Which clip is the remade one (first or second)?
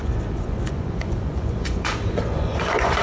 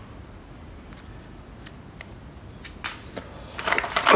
first